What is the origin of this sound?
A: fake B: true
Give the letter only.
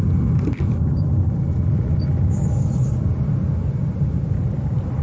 B